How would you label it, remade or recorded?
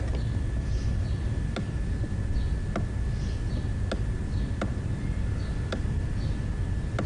recorded